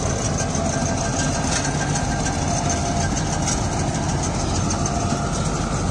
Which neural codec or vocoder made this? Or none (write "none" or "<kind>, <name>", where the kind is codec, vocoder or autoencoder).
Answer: none